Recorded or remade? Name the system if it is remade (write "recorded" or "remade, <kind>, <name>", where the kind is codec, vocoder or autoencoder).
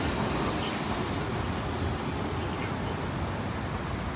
recorded